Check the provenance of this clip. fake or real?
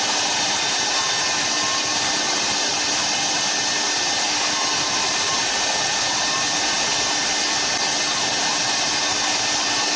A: real